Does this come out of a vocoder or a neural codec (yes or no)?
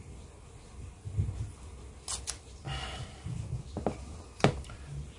no